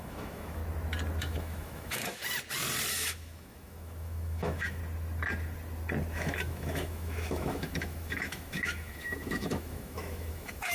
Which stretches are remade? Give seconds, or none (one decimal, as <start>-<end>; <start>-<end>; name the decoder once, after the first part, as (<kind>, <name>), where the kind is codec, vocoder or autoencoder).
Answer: 0.0-0.6 (autoencoder, DAC-VAE); 1.2-2.2; 2.9-4.8; 6.1-10.7